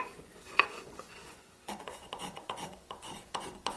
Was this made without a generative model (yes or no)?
no